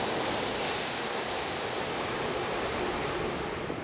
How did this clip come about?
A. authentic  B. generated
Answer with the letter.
A